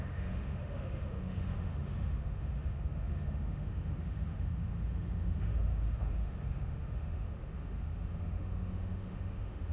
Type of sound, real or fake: fake